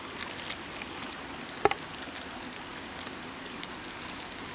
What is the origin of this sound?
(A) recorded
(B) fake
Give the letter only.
A